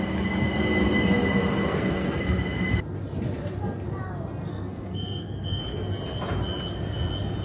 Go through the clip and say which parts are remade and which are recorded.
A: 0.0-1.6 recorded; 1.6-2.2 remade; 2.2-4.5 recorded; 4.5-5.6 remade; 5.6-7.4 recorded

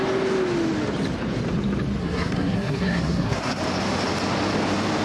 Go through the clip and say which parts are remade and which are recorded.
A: 0.0-2.0 recorded; 2.0-3.6 remade; 3.6-5.0 recorded

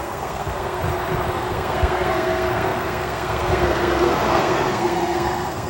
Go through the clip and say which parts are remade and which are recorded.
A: 0.0-0.8 remade; 0.8-1.3 recorded; 1.3-5.7 remade

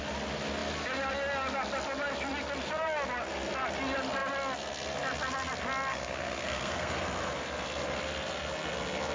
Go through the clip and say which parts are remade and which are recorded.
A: 0.0-5.9 recorded; 5.9-6.9 remade; 6.9-9.1 recorded

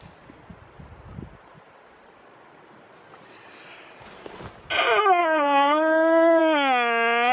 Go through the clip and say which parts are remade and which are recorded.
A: 0.0-5.2 recorded; 5.2-6.4 remade; 6.4-7.3 recorded

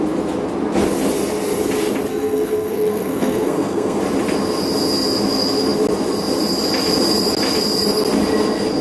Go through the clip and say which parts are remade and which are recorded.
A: 0.0-2.1 recorded; 2.1-4.0 remade; 4.0-8.8 recorded

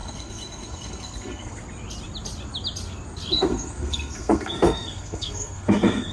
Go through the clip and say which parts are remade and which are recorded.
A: 0.0-1.6 remade; 1.6-3.3 recorded; 3.3-6.1 remade